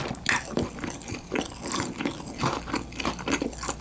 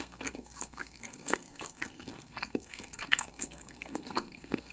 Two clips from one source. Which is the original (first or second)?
first